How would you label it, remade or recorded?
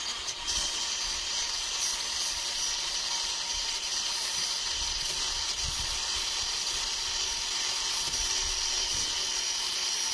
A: remade